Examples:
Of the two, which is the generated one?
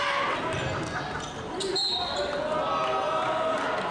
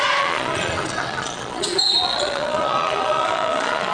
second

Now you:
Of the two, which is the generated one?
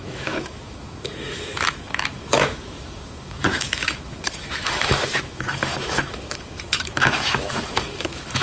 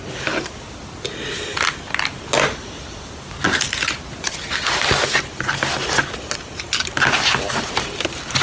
first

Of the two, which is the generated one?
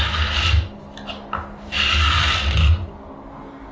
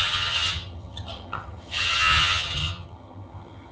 second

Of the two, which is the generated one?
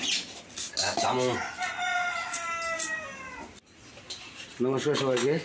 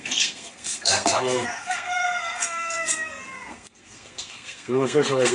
second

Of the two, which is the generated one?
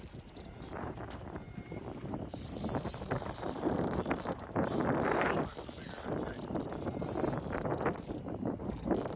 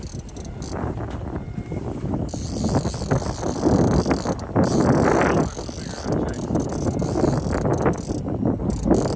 first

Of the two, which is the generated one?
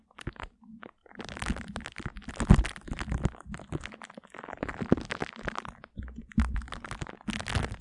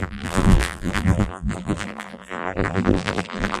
second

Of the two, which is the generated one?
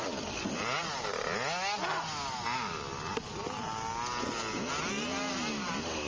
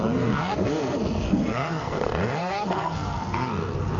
second